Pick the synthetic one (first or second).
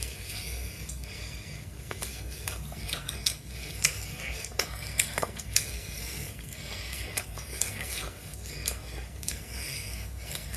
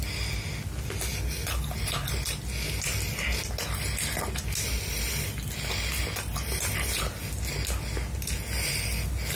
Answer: first